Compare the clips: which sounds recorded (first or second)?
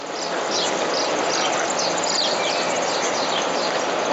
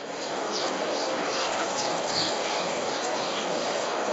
first